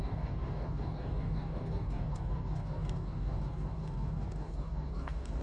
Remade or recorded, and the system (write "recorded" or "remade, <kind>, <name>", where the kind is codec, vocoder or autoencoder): remade, codec, DAC